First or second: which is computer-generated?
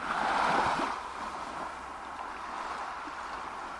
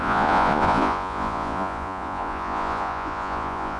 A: second